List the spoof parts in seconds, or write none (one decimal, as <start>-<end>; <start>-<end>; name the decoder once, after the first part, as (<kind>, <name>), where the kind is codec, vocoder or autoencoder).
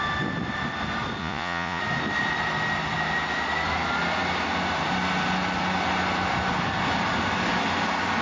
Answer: 1.2-1.8 (vocoder, Vocos)